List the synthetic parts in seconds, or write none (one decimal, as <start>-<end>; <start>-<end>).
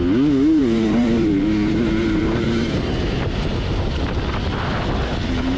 0.6-4.0